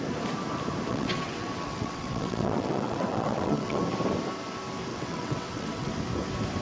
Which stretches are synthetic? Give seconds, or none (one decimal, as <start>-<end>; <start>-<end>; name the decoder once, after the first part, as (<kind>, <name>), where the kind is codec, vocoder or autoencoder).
0.9-3.8 (vocoder, WaveNeXt); 4.9-5.9